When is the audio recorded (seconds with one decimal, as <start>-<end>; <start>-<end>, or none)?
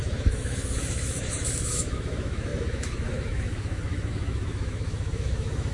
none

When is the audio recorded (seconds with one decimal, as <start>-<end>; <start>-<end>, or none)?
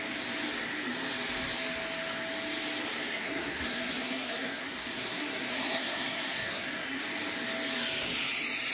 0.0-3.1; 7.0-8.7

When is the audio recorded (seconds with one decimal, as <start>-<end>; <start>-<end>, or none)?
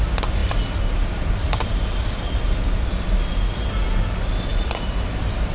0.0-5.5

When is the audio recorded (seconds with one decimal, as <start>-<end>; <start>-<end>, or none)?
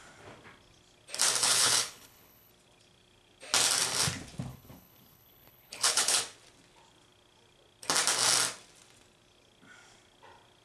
0.0-1.4; 2.5-4.5; 6.2-10.6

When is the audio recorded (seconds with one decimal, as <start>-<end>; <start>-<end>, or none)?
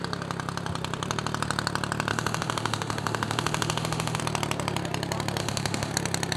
0.0-2.1; 4.2-5.4; 5.9-6.4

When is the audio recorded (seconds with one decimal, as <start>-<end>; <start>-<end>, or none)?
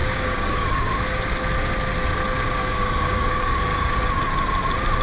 0.9-2.6; 4.0-5.0